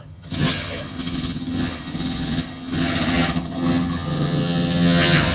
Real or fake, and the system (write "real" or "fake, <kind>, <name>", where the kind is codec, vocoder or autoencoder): fake, vocoder, HiFi-GAN